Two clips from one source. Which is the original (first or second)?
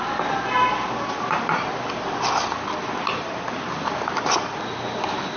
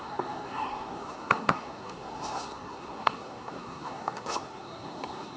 first